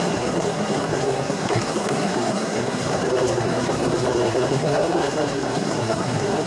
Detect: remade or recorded remade